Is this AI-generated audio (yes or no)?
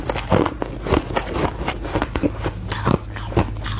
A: no